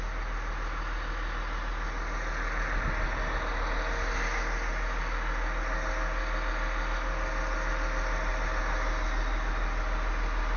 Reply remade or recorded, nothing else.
recorded